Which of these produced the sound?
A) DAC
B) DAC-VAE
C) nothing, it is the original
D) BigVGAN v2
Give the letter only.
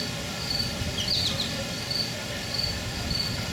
C